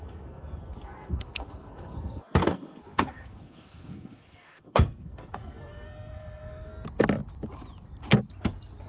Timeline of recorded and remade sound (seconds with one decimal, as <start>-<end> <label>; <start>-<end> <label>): 0.0-6.7 remade; 6.7-8.9 recorded

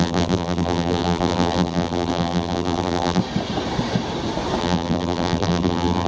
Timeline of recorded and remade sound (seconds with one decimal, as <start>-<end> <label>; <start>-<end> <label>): 0.0-3.2 remade; 3.2-4.6 recorded; 4.6-6.1 remade

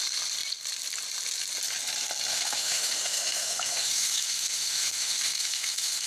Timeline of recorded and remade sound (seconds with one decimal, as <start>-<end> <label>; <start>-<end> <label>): 0.0-2.3 recorded; 2.3-6.1 remade

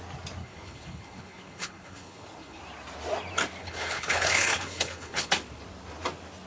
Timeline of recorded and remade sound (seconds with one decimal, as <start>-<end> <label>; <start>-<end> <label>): 0.0-0.4 recorded; 0.4-2.6 remade; 2.6-3.6 recorded; 3.6-5.3 remade; 5.3-6.5 recorded

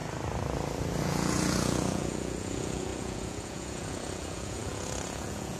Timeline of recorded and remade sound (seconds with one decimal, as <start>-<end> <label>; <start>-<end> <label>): 0.0-1.0 recorded; 1.0-5.6 remade

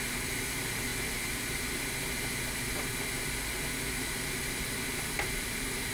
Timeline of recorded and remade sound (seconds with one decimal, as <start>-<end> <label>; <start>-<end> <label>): 0.0-0.9 remade; 0.9-4.4 recorded; 4.4-5.9 remade

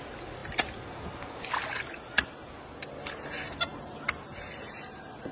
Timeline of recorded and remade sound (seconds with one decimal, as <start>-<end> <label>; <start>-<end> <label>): 0.0-5.3 recorded